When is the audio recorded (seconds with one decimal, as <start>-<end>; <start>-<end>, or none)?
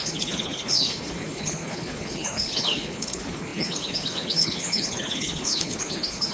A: none